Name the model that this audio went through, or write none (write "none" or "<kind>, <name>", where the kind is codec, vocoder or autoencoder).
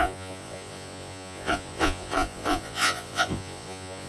vocoder, Vocos